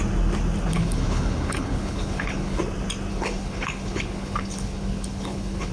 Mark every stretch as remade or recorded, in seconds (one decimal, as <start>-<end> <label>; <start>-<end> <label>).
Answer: 0.0-0.7 recorded; 0.7-2.6 remade; 2.6-3.1 recorded; 3.1-5.7 remade